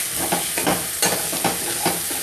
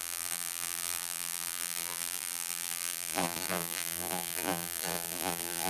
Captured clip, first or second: first